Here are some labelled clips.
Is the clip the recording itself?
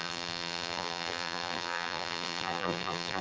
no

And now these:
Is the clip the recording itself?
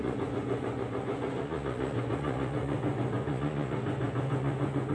no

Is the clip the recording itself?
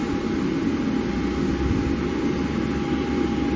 yes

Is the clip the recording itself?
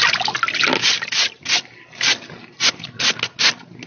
yes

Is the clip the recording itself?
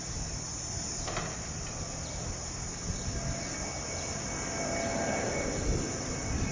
yes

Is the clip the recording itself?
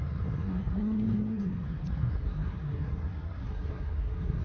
no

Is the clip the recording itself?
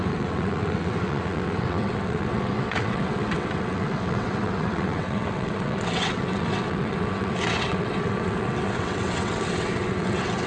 no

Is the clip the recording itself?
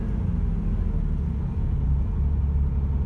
yes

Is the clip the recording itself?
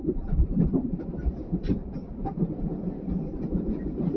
yes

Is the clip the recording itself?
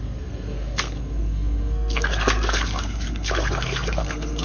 no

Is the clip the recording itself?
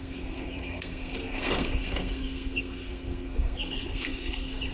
no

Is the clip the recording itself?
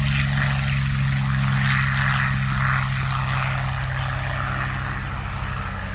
yes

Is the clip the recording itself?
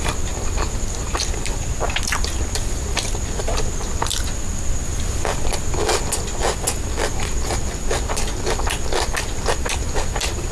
yes